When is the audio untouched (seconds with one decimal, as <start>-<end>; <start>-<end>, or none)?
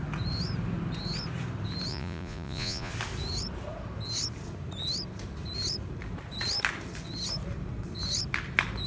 0.0-1.9; 2.9-8.9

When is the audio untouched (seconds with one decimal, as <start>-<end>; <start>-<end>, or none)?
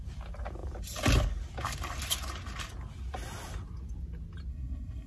0.0-4.5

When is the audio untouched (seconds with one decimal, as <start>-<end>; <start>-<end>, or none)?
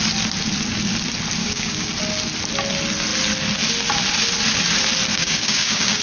0.0-1.4; 1.9-5.1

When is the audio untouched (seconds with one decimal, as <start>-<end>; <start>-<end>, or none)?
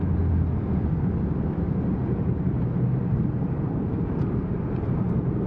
0.0-2.0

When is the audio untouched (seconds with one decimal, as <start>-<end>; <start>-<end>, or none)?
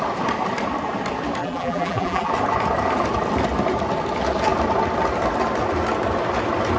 0.0-1.4; 2.3-6.8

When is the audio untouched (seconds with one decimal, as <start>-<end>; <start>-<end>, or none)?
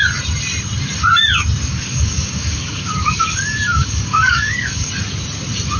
0.0-1.7; 4.9-5.8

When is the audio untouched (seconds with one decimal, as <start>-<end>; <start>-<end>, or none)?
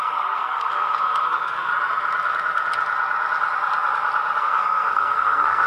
1.7-4.4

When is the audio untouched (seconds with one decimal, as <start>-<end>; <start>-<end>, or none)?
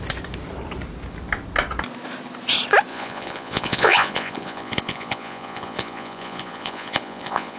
0.0-2.9